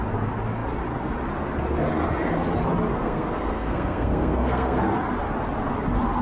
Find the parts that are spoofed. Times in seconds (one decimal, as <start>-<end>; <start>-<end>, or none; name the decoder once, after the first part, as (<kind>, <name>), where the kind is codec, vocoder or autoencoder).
2.9-4.8 (codec, SNAC)